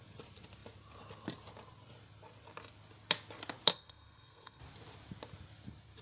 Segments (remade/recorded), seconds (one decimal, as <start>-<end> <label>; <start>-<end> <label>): 0.0-3.7 recorded; 3.7-4.6 remade; 4.6-6.0 recorded